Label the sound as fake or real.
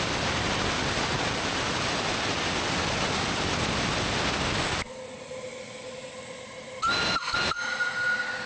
real